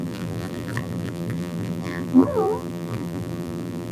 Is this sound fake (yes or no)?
yes